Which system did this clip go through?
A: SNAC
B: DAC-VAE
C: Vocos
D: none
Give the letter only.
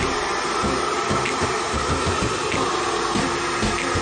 D